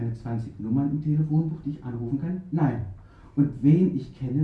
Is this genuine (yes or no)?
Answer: yes